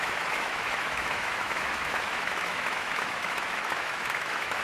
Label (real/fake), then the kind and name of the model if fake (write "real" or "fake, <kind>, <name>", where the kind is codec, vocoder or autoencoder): fake, autoencoder, DAC-VAE